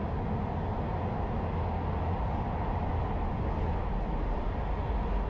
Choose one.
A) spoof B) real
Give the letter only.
B